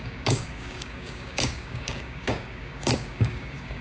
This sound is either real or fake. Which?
fake